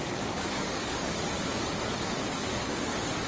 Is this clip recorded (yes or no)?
no